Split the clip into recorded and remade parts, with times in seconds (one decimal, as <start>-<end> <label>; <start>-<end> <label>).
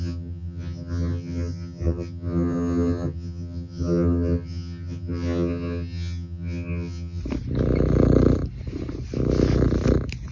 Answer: 0.0-7.2 remade; 7.2-10.3 recorded